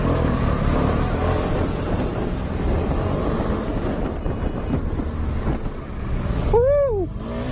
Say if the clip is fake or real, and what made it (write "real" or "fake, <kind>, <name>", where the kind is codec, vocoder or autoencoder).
real